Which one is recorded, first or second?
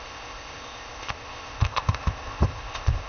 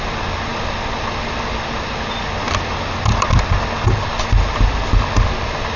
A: second